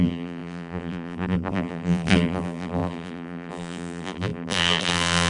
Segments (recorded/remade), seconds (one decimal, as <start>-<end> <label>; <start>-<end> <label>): 0.0-5.3 remade